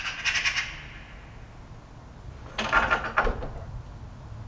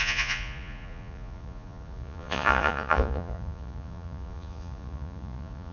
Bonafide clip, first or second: first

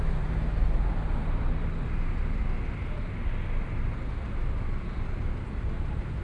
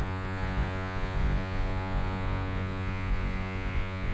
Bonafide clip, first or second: first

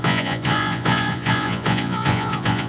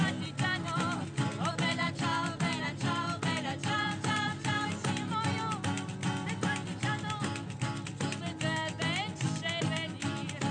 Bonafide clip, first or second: second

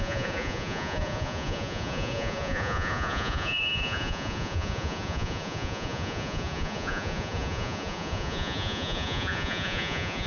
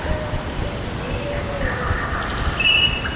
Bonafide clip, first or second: second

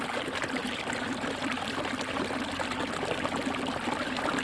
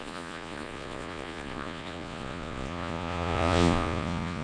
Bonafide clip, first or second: first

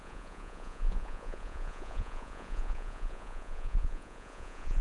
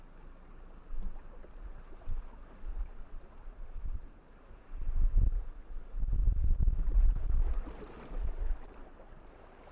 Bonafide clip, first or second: second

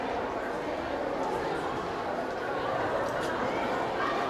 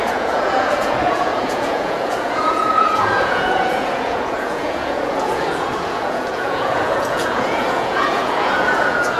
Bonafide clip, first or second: first